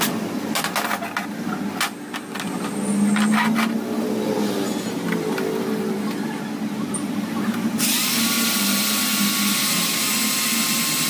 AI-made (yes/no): no